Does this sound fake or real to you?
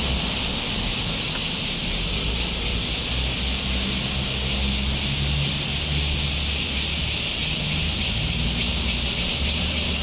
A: real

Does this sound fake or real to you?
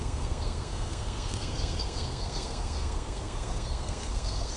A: fake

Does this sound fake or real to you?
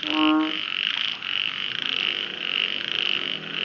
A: real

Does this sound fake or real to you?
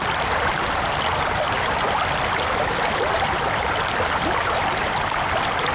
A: real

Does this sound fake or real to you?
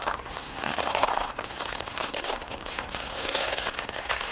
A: fake